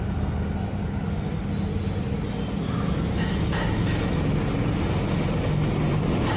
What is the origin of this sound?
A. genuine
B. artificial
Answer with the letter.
A